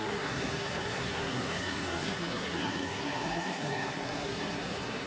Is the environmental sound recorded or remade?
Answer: remade